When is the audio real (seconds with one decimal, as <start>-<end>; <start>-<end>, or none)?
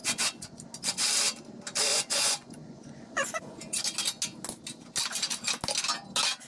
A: 0.6-1.9; 3.8-6.5